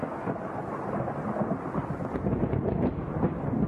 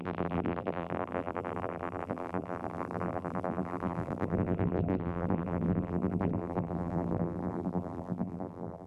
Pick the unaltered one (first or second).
first